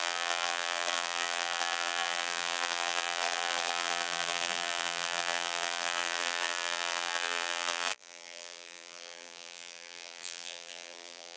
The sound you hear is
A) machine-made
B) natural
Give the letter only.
A